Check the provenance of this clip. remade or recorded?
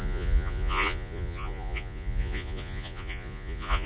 remade